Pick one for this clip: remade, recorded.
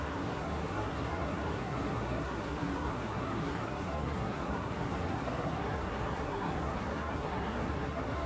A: remade